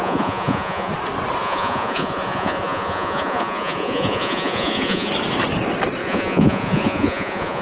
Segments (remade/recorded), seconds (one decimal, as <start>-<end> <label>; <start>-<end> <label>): 0.0-0.9 remade; 0.9-1.4 recorded; 1.4-5.1 remade; 5.1-6.0 recorded; 6.0-7.6 remade